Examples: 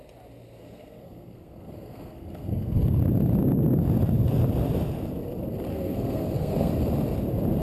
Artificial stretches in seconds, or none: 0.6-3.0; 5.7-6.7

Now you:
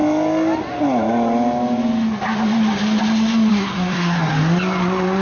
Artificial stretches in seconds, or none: 3.5-4.3

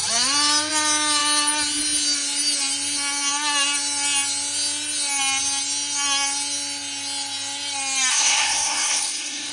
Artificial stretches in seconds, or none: 8.1-9.5

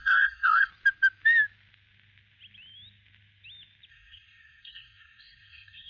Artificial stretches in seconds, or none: 0.0-0.7; 3.9-5.9

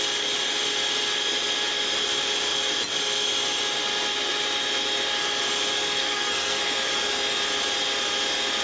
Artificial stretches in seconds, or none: 6.0-6.6